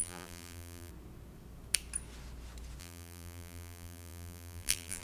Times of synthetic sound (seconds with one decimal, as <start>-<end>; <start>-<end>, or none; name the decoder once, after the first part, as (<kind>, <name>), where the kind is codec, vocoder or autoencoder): 0.0-0.9 (vocoder, BigVGAN v2); 2.8-5.0